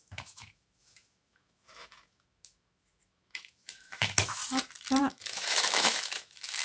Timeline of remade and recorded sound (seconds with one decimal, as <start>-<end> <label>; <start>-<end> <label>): 0.0-4.4 remade; 4.4-5.0 recorded; 5.0-6.6 remade